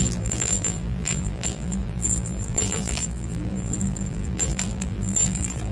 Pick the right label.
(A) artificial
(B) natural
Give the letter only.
A